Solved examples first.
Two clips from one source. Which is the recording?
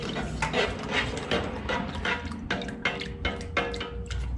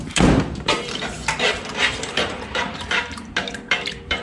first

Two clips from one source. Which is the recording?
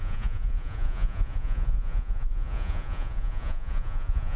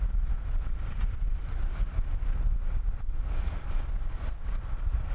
second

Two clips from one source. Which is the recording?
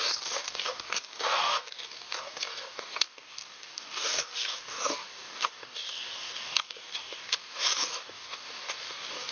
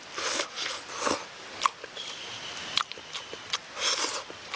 second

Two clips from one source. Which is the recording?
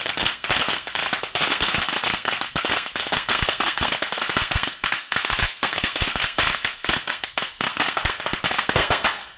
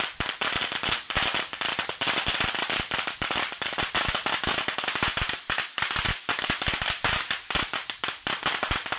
second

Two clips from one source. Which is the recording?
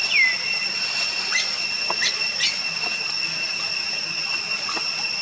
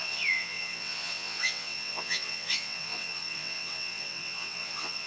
first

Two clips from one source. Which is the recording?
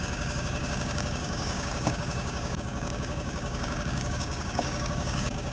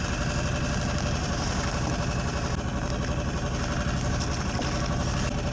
second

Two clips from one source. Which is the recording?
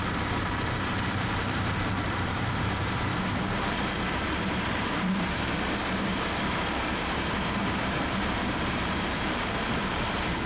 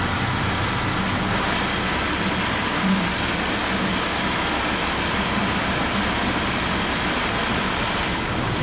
second